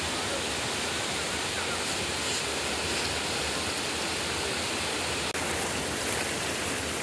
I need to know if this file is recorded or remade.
recorded